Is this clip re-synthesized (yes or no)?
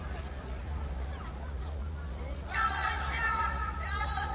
yes